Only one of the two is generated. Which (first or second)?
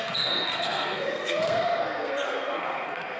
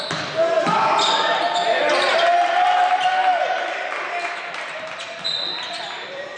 first